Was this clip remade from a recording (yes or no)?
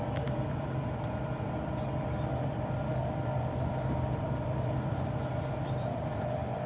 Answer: yes